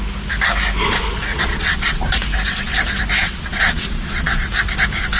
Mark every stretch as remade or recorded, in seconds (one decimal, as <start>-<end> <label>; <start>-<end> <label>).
0.0-1.3 recorded; 1.3-2.1 remade; 2.1-3.2 recorded; 3.2-4.5 remade; 4.5-5.2 recorded